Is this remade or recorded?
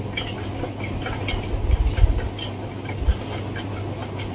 recorded